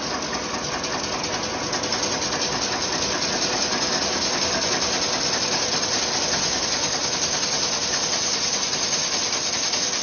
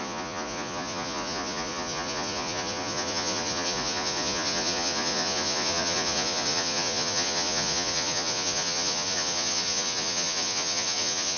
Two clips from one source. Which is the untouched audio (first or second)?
first